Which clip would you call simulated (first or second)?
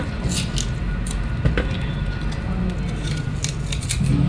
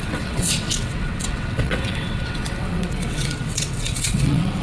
second